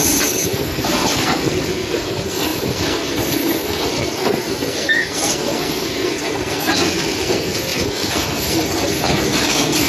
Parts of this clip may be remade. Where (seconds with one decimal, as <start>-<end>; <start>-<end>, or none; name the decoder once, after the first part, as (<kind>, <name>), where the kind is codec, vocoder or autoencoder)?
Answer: 0.0-9.9 (codec, SNAC)